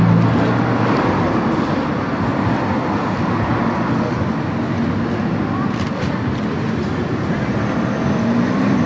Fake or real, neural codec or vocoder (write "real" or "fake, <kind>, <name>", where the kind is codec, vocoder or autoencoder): real